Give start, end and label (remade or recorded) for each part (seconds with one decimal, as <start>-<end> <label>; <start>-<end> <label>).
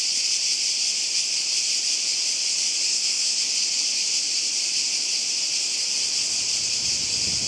0.0-2.9 recorded; 2.9-3.4 remade; 3.4-7.5 recorded